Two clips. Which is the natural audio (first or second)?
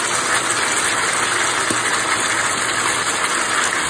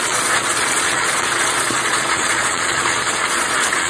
first